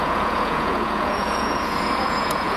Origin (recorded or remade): remade